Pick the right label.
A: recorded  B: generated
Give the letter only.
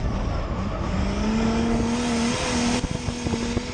A